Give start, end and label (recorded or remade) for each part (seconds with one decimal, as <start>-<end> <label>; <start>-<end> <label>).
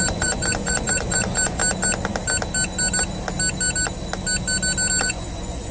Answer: 0.0-1.6 remade; 1.6-5.0 recorded; 5.0-5.7 remade